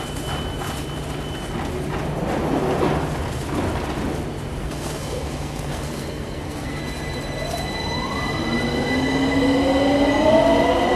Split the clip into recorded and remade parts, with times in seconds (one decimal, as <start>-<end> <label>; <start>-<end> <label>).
0.0-4.6 recorded; 4.6-6.8 remade; 6.8-11.0 recorded